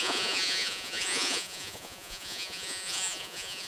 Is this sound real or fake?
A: fake